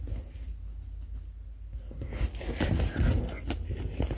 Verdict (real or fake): real